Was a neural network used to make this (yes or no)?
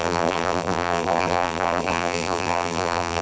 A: yes